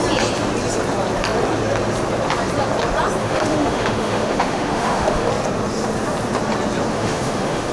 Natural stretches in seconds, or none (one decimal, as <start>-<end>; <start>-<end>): 0.0-3.2; 5.3-6.9